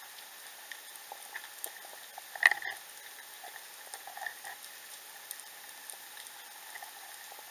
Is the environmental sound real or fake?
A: real